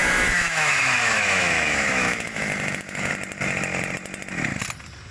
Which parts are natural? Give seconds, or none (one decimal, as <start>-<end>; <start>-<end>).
3.1-5.1